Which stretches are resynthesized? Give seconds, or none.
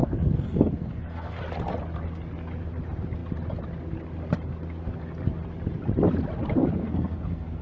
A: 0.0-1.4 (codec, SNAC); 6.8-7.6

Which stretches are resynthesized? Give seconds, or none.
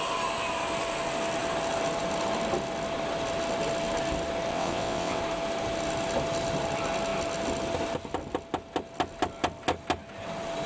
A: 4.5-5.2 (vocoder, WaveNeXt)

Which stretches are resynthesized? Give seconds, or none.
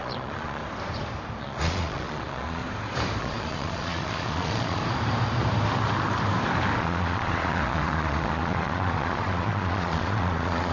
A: 0.0-0.6 (vocoder, Vocos); 1.4-2.6; 3.2-4.8; 6.8-10.7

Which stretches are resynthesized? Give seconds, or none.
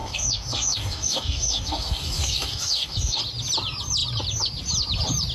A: 0.0-3.2 (codec, DAC)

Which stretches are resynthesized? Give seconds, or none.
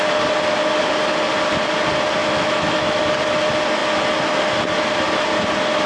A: 2.2-3.0 (autoencoder, DAC-VAE)